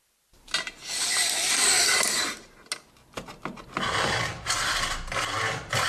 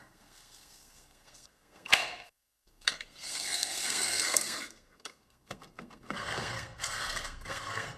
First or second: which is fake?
second